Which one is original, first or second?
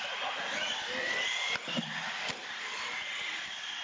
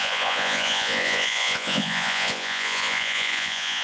first